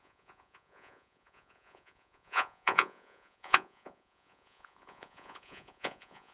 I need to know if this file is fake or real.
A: fake